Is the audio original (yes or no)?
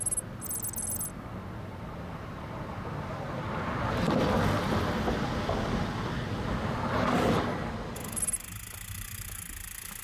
yes